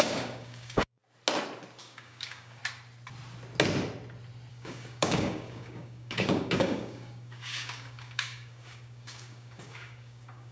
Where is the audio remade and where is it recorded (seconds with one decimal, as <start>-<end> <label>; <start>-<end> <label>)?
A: 0.0-1.0 remade; 1.0-1.8 recorded; 1.8-2.6 remade; 2.6-4.5 recorded; 4.5-10.5 remade